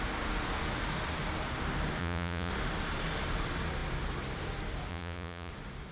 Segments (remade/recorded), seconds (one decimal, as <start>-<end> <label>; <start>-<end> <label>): 0.0-2.0 recorded; 2.0-2.5 remade; 2.5-4.9 recorded; 4.9-5.5 remade; 5.5-5.9 recorded